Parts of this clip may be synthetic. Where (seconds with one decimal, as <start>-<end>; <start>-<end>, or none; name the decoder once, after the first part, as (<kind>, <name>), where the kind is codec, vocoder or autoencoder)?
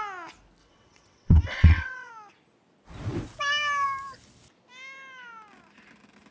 0.6-2.1 (vocoder, WaveNeXt)